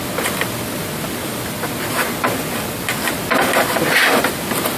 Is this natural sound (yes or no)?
yes